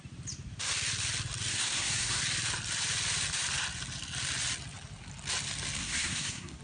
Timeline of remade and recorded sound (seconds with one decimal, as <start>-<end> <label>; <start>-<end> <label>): 0.0-1.5 recorded; 1.5-2.2 remade; 2.2-5.8 recorded; 5.8-6.6 remade